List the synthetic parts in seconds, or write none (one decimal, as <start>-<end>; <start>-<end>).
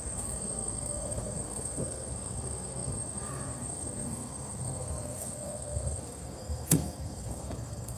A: 0.0-8.0